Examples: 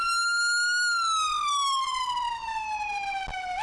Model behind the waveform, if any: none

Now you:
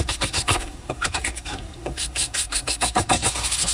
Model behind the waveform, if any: codec, SNAC